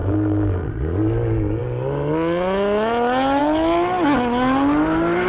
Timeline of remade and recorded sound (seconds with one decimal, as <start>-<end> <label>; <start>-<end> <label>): 0.0-0.7 remade; 0.7-5.3 recorded